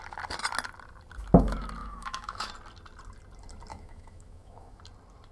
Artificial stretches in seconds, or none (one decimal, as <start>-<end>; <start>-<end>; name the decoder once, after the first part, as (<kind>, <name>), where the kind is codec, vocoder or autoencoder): 1.8-2.5 (autoencoder, DAC-VAE); 3.7-4.8